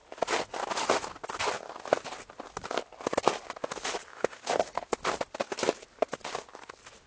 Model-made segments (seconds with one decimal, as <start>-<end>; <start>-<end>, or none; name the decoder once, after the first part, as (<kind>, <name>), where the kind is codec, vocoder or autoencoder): 4.1-5.0 (autoencoder, DAC-VAE)